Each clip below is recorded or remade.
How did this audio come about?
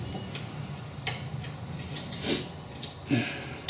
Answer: recorded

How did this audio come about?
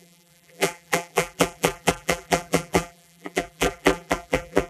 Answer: remade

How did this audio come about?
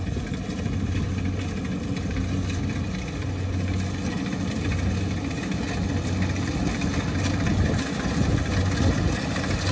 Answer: recorded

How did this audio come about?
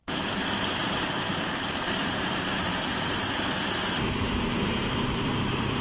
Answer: remade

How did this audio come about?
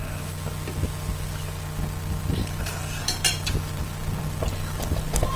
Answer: recorded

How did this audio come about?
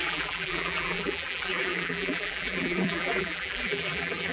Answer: remade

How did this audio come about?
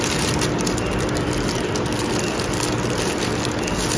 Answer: recorded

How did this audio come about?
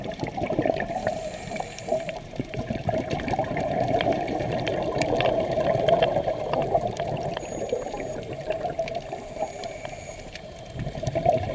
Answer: remade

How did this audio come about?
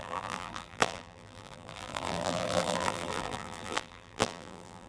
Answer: remade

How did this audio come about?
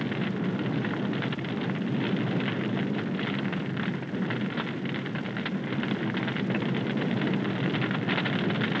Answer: recorded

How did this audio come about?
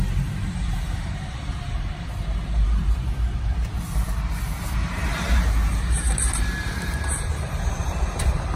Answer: remade